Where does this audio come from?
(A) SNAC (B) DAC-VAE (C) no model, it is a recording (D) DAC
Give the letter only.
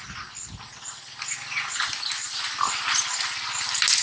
C